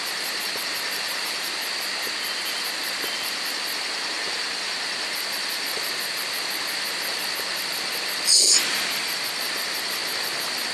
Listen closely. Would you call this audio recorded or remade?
recorded